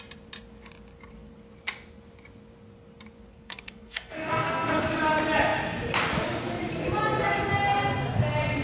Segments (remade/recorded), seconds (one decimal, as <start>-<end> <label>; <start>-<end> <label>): 0.0-3.3 recorded; 3.3-4.9 remade; 4.9-8.6 recorded